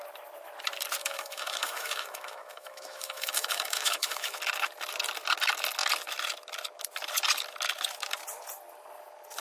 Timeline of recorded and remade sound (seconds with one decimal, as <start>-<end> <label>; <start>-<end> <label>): 0.0-1.0 recorded; 1.0-4.4 remade; 4.4-9.4 recorded